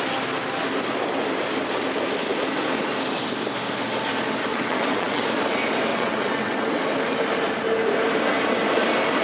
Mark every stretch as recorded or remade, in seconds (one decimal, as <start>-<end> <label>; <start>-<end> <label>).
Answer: 0.0-4.5 recorded; 4.5-5.2 remade; 5.2-5.9 recorded; 5.9-6.8 remade; 6.8-9.2 recorded